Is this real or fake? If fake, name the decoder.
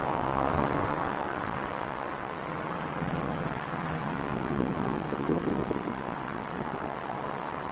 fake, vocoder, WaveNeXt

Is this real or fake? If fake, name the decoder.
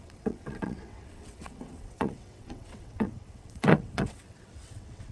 fake, vocoder, WaveNeXt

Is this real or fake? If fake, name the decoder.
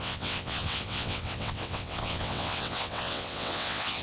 fake, vocoder, WaveNeXt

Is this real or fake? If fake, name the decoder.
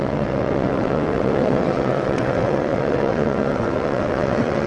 fake, vocoder, WaveNeXt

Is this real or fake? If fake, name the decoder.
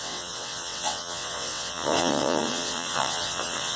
fake, vocoder, WaveNeXt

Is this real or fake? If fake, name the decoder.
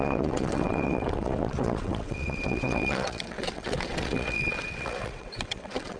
fake, vocoder, WaveNeXt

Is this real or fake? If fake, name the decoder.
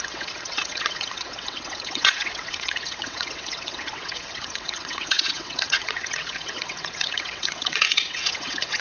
fake, vocoder, WaveNeXt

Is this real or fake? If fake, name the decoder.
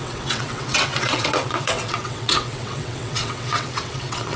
fake, vocoder, WaveNeXt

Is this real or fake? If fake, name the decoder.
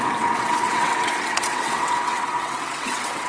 fake, vocoder, WaveNeXt